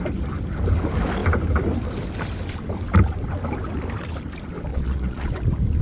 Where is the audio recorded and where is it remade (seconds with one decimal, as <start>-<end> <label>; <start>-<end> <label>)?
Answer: 0.0-4.7 recorded; 4.7-5.3 remade; 5.3-5.8 recorded